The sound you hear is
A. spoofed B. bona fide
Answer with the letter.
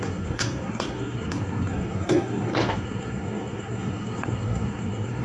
A